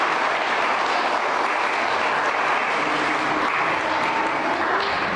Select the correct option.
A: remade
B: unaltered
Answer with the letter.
B